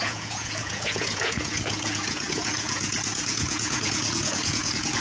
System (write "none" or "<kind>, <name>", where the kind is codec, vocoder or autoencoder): vocoder, Vocos